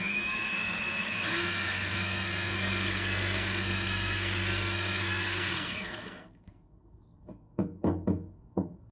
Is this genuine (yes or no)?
no